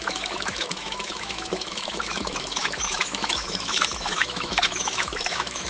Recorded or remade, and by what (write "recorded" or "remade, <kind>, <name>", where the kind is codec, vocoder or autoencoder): remade, autoencoder, DAC-VAE